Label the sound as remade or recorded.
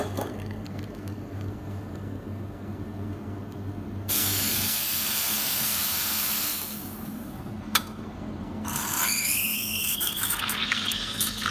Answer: remade